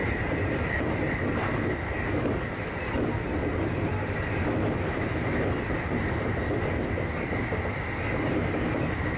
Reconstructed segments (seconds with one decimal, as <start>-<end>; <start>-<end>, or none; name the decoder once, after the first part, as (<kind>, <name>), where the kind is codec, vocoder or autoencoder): none